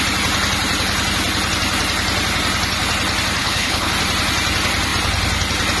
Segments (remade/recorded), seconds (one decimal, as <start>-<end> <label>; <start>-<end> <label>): 0.0-3.4 recorded; 3.4-3.9 remade; 3.9-5.8 recorded